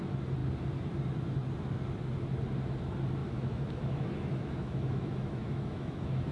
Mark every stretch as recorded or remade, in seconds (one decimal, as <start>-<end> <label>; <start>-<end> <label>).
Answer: 0.0-3.2 recorded; 3.2-6.3 remade